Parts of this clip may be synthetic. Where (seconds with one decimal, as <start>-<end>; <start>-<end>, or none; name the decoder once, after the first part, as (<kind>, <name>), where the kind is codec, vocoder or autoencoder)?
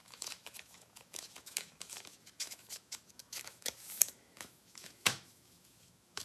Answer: 0.0-6.2 (autoencoder, DAC-VAE)